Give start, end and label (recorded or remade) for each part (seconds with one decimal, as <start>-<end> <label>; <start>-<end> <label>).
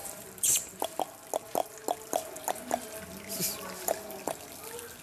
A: 0.0-1.0 remade; 1.0-5.0 recorded